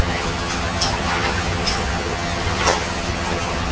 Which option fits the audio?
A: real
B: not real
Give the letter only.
B